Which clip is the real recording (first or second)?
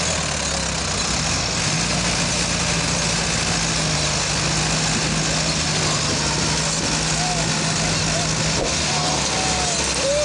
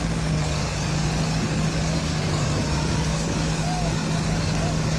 first